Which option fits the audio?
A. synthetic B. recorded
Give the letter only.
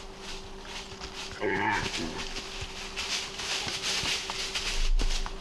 B